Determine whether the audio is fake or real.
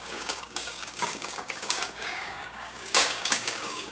fake